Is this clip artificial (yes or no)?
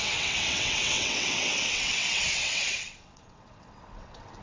yes